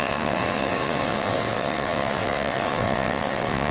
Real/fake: fake